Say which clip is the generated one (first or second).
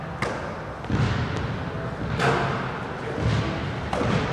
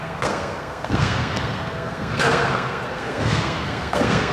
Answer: second